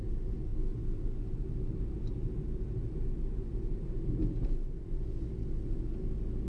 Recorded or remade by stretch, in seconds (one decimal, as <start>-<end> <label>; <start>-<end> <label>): 0.0-6.5 recorded